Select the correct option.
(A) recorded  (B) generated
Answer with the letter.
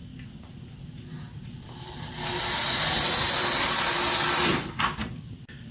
A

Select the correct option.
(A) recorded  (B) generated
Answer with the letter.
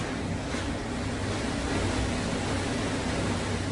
A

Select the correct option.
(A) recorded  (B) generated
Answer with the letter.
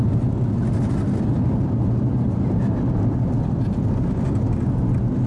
A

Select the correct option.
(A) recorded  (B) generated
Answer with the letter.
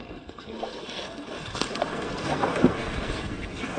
B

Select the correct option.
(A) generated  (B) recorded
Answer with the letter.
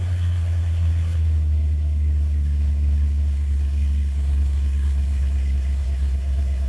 A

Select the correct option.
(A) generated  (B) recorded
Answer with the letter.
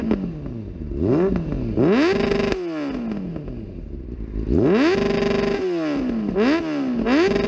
B